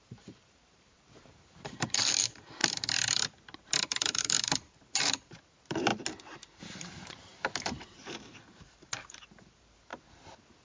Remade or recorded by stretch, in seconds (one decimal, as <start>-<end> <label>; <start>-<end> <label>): 0.0-2.6 remade; 2.6-3.8 recorded; 3.8-5.9 remade; 5.9-6.6 recorded; 6.6-9.9 remade; 9.9-10.6 recorded